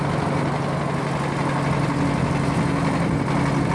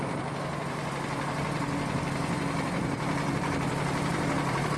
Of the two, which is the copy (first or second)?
second